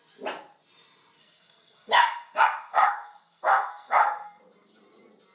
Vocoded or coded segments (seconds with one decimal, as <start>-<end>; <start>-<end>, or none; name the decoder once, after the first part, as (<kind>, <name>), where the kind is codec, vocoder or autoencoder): 1.2-4.4 (codec, SNAC)